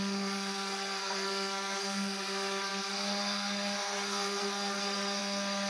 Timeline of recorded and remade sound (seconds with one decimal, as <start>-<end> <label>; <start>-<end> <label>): 0.0-5.7 remade